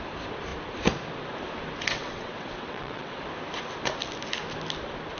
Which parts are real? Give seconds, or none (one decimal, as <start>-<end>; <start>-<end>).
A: 0.0-1.8; 3.2-5.2

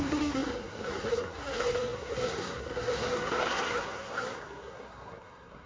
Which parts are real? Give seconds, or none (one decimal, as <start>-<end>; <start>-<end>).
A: none

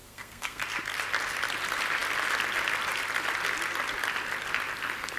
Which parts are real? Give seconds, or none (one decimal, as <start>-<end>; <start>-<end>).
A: 0.6-5.2

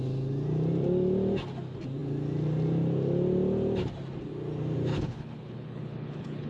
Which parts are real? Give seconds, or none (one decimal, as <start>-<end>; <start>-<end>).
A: 0.0-4.9

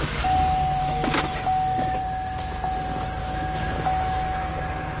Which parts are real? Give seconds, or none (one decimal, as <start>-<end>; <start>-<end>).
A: 0.0-0.8; 2.0-3.2; 4.5-5.0